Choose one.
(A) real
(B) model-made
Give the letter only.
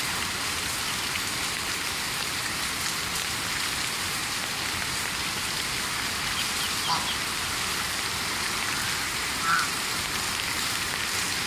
B